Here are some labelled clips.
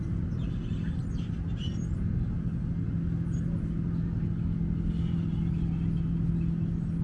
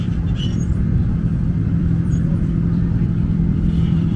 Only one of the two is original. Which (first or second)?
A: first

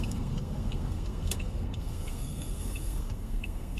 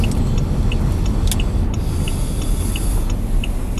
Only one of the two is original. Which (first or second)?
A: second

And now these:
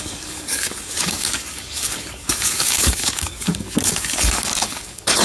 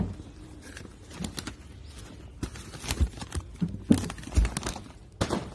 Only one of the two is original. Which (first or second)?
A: second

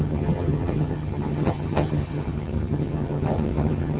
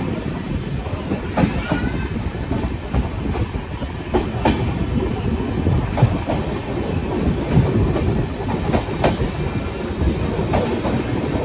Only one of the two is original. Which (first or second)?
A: second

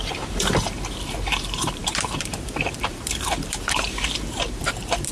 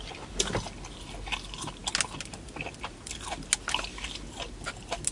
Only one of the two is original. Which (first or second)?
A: second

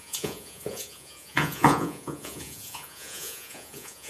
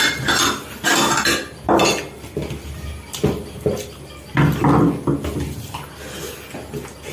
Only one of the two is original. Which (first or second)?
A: second